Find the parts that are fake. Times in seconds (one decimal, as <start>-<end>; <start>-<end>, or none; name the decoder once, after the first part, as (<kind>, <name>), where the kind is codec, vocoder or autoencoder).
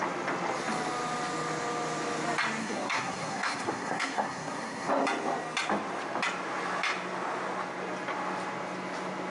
2.6-4.9 (codec, SNAC)